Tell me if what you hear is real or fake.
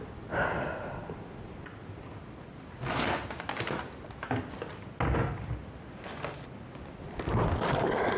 real